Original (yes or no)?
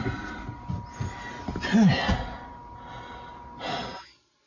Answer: yes